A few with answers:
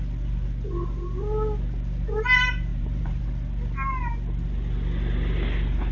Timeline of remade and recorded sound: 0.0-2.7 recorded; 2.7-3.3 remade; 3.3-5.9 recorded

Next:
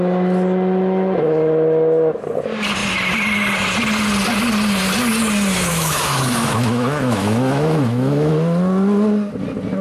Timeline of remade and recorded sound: 0.0-5.7 recorded; 5.7-8.3 remade; 8.3-9.8 recorded

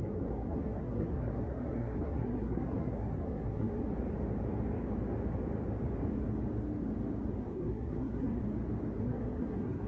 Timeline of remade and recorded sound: 0.0-3.9 remade; 3.9-7.4 recorded; 7.4-8.4 remade; 8.4-9.0 recorded; 9.0-9.9 remade